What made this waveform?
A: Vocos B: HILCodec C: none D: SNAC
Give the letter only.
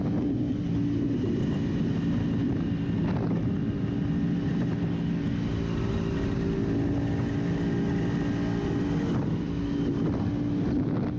C